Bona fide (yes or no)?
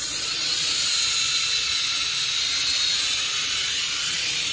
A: no